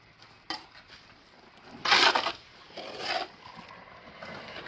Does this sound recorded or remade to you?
recorded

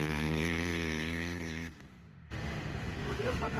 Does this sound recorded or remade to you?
remade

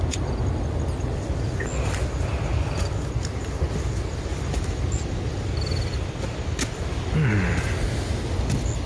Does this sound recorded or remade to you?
recorded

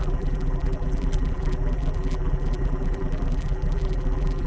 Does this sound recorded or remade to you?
remade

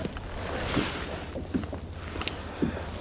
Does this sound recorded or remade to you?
recorded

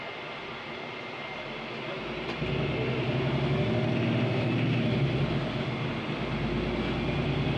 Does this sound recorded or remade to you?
recorded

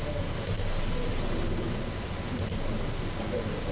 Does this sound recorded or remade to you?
recorded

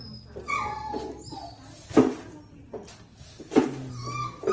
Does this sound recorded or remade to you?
recorded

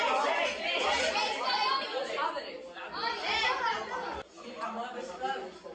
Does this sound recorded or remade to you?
recorded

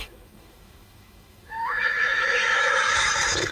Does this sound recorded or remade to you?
remade